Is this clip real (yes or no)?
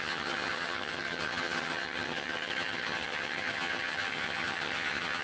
no